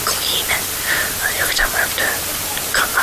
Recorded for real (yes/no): yes